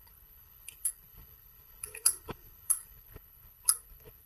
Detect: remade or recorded remade